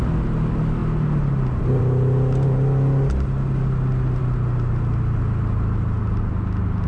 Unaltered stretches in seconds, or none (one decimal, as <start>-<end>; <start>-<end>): 0.0-6.9